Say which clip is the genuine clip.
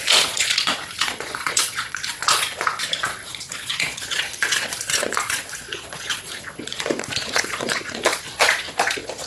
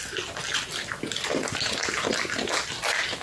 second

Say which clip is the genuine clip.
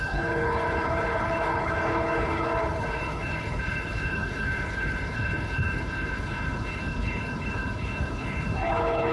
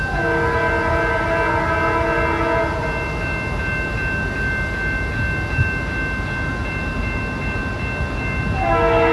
second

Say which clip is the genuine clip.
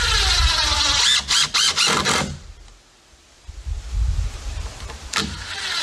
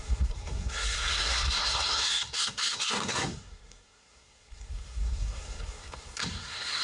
first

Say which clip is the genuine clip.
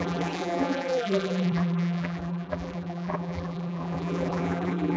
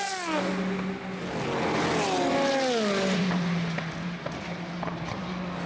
second